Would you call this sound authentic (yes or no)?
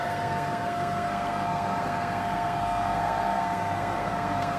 no